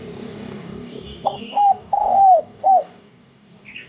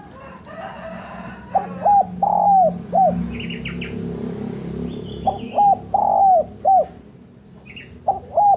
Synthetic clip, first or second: first